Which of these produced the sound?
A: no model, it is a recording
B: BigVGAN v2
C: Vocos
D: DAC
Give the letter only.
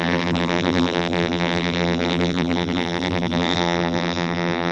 B